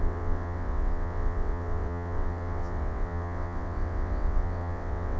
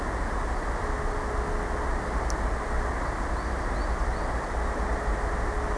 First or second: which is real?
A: second